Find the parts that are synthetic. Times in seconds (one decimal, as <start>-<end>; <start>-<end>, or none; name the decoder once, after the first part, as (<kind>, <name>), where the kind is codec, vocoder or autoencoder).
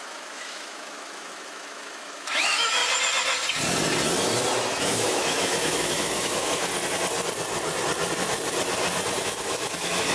0.0-2.8 (autoencoder, DAC-VAE); 4.8-6.7; 9.2-10.1